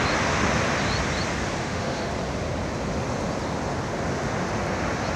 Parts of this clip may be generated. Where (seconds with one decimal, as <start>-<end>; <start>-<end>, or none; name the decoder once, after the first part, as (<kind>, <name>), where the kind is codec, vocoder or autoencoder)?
1.6-2.1 (autoencoder, DAC-VAE)